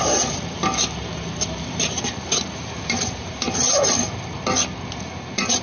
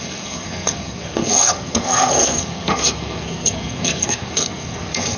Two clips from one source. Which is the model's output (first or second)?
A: second